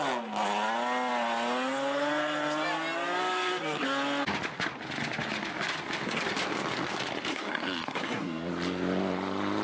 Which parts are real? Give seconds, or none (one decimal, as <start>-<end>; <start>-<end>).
0.0-7.3; 8.5-9.6